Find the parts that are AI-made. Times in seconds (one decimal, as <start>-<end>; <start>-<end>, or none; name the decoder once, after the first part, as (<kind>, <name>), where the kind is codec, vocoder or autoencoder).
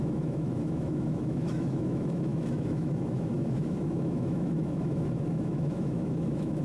0.0-6.6 (autoencoder, DAC-VAE)